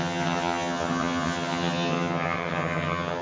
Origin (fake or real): fake